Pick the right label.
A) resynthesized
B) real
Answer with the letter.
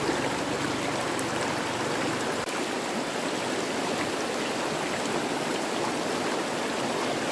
B